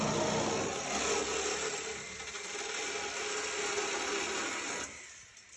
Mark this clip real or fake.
real